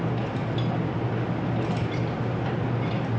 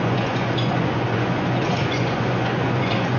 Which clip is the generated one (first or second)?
second